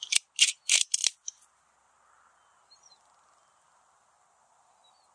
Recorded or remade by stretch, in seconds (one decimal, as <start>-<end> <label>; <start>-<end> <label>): 0.0-5.1 recorded